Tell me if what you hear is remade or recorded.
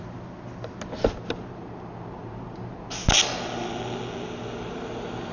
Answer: recorded